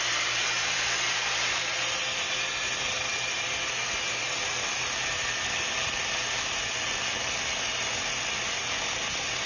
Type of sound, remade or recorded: recorded